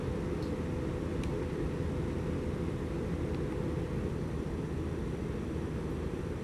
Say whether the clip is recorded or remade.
recorded